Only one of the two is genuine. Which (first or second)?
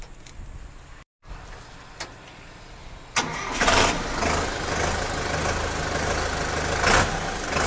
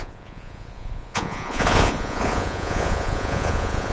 first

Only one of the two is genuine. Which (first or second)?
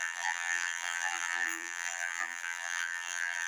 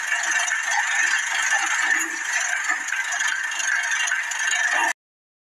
second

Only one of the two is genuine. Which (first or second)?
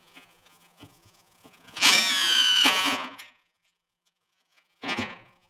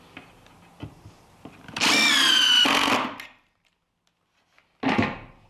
second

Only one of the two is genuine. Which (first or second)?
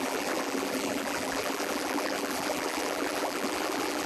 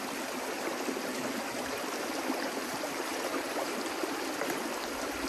second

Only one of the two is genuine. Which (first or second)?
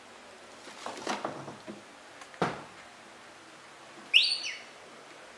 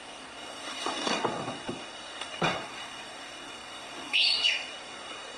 first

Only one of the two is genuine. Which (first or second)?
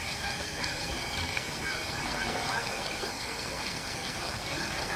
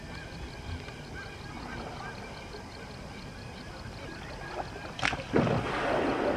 second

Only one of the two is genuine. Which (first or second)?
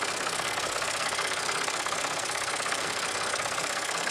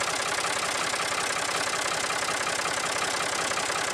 second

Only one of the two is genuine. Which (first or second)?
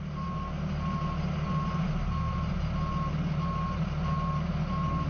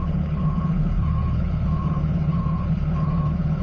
first